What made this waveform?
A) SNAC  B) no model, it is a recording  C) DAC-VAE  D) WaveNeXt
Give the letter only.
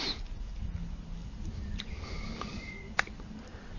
B